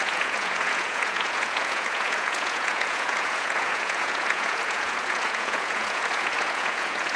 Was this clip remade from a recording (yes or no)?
yes